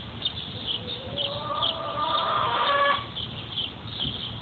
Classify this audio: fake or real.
real